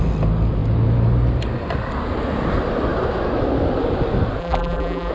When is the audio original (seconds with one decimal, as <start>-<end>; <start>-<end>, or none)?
0.0-4.4